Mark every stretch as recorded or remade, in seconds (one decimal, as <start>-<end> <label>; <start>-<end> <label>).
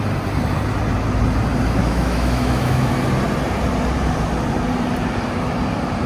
0.0-1.8 recorded; 1.8-2.9 remade; 2.9-6.1 recorded